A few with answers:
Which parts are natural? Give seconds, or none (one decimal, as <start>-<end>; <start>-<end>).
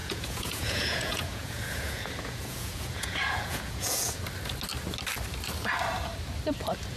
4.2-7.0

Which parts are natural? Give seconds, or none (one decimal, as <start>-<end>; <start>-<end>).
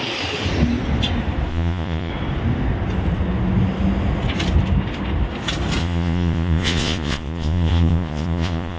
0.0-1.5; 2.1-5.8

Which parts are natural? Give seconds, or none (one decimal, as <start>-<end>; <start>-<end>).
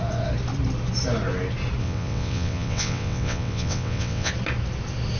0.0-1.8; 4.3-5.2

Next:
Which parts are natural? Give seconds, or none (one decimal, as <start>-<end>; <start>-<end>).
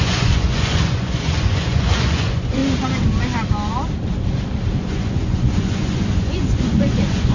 2.6-4.8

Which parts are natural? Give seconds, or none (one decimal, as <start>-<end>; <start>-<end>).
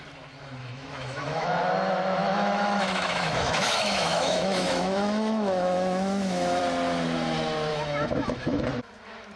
0.0-0.6; 1.6-2.2; 6.6-7.7; 8.7-9.4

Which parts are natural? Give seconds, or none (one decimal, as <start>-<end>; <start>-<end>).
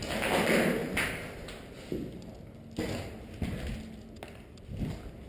0.0-5.3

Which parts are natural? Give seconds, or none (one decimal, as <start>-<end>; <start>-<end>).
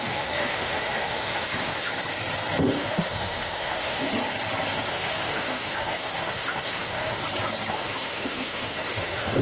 1.9-2.6; 4.1-4.9; 7.2-7.7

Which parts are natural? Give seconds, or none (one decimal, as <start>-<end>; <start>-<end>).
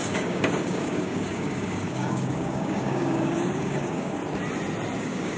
4.2-5.0